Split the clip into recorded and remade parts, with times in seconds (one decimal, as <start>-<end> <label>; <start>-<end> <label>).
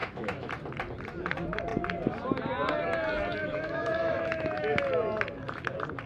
0.0-0.5 remade; 0.5-3.4 recorded; 3.4-4.8 remade; 4.8-6.1 recorded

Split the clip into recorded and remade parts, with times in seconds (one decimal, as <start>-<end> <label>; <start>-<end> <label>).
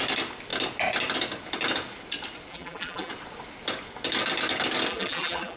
0.0-2.5 recorded; 2.5-3.1 remade; 3.1-4.9 recorded; 4.9-5.6 remade